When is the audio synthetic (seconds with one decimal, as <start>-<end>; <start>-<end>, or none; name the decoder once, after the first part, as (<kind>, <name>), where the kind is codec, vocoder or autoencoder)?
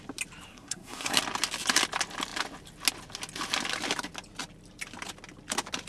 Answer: 0.5-1.2 (codec, SNAC)